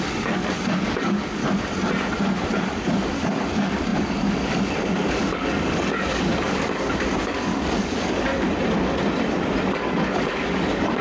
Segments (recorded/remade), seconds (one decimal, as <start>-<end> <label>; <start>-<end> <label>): 0.0-1.4 remade; 1.4-2.5 recorded; 2.5-8.3 remade; 8.3-9.7 recorded; 9.7-11.0 remade